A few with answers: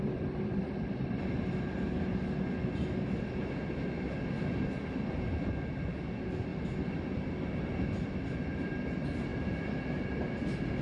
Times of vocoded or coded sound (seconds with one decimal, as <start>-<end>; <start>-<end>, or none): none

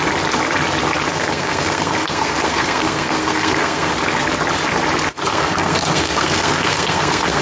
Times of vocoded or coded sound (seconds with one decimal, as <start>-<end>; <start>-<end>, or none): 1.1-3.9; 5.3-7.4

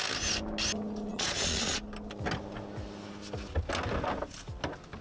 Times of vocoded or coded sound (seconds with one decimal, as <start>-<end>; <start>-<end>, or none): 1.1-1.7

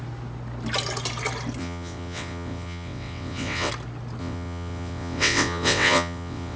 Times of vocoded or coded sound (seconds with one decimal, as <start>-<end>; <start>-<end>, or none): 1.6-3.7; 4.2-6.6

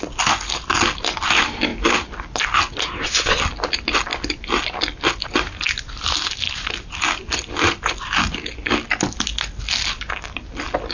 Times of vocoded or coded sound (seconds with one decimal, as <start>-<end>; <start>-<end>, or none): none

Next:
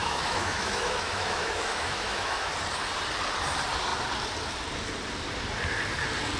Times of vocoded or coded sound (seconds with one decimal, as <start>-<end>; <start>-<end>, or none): 0.0-2.5

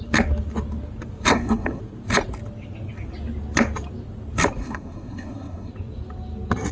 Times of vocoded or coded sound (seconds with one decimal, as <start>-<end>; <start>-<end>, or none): 1.3-1.8; 4.6-5.7

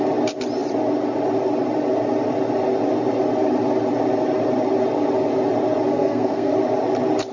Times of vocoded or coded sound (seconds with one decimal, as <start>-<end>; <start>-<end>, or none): 5.9-6.5